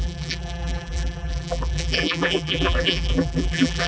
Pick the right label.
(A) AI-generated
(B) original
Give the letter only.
A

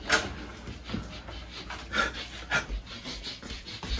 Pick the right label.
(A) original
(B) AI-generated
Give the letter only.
A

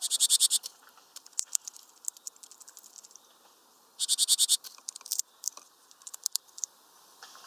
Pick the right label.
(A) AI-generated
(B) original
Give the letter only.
A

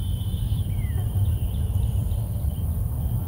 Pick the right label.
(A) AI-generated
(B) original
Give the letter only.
A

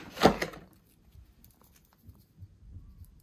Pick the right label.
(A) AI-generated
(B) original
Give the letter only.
B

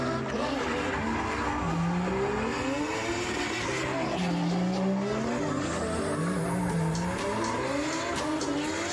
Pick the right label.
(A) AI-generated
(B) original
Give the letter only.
B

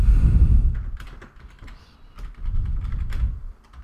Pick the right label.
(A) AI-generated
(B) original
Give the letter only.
A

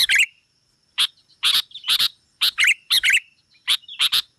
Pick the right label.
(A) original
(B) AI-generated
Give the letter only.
B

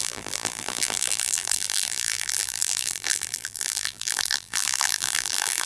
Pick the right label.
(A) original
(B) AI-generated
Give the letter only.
B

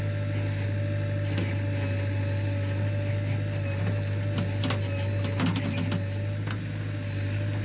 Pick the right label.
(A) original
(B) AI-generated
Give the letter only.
A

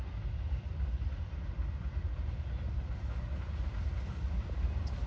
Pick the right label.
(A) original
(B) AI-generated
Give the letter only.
A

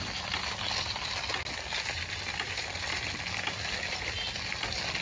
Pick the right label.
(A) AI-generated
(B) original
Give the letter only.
B